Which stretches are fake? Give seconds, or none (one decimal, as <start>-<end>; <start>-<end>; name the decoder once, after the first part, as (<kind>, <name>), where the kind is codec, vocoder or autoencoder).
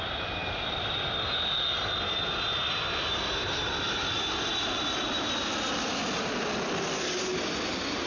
none